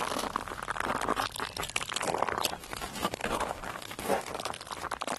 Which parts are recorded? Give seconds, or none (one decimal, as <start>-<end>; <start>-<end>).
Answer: 0.0-2.6; 4.3-5.2